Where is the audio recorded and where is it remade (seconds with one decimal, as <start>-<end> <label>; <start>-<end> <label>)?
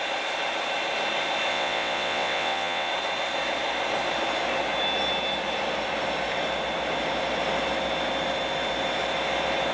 0.0-1.5 recorded; 1.5-2.9 remade; 2.9-9.7 recorded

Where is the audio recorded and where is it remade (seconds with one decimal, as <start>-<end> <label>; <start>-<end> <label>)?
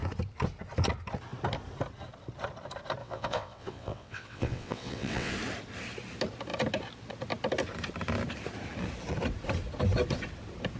0.0-3.0 recorded; 3.0-5.3 remade; 5.3-10.8 recorded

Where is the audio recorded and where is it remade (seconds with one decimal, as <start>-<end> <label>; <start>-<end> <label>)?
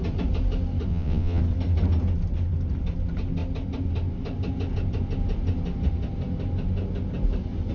0.0-0.9 recorded; 0.9-1.4 remade; 1.4-7.7 recorded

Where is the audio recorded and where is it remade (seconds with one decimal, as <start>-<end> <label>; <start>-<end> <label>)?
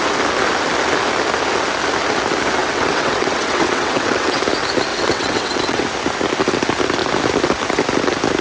0.0-2.6 recorded; 2.6-4.4 remade; 4.4-4.9 recorded; 4.9-5.8 remade; 5.8-8.4 recorded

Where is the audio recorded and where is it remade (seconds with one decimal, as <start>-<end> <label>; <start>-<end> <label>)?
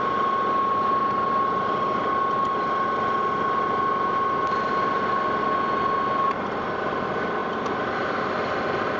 0.0-9.0 recorded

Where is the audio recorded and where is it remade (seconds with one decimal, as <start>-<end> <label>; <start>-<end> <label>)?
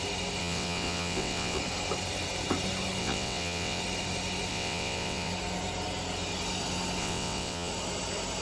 0.0-0.4 recorded; 0.4-1.6 remade; 1.6-3.0 recorded; 3.0-3.8 remade; 3.8-4.5 recorded; 4.5-5.3 remade; 5.3-7.0 recorded; 7.0-7.7 remade; 7.7-8.4 recorded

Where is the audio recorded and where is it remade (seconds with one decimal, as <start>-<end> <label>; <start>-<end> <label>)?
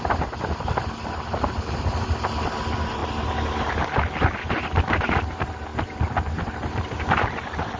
0.0-7.8 recorded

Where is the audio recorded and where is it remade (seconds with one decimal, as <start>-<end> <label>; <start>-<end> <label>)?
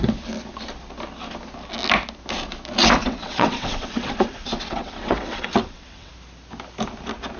0.0-3.0 recorded; 3.0-6.1 remade; 6.1-7.4 recorded